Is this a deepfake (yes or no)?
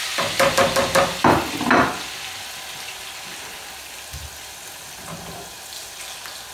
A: no